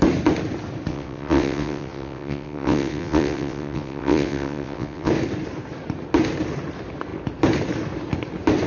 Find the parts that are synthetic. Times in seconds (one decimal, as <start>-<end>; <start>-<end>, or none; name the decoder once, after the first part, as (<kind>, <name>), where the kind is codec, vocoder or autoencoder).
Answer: 0.9-5.1 (vocoder, WaveNeXt)